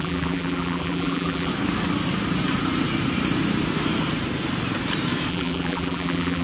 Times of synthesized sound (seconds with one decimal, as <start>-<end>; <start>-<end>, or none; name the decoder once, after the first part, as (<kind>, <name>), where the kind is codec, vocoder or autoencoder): 0.0-1.5 (vocoder, BigVGAN v2); 5.3-6.4